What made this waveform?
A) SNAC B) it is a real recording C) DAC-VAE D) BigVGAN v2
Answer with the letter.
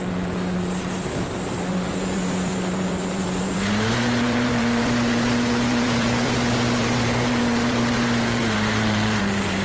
D